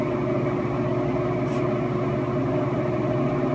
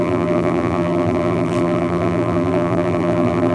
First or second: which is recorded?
first